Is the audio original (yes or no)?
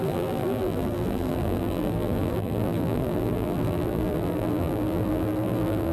no